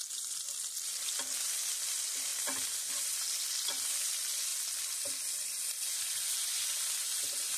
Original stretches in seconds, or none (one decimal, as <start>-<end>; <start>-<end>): 0.0-7.6